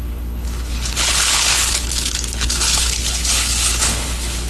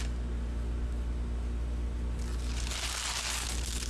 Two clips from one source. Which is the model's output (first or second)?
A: first